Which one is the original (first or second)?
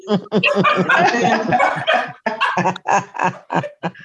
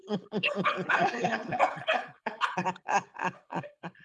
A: first